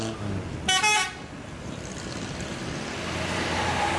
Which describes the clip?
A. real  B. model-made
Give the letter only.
A